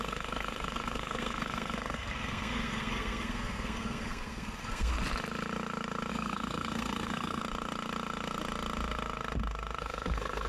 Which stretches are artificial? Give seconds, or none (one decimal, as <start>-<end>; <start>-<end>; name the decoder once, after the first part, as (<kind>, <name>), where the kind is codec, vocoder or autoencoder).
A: 0.0-4.9 (codec, SNAC); 6.1-7.4; 9.8-10.5